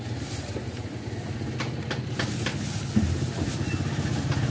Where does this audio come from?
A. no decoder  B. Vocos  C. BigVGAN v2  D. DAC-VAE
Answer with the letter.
A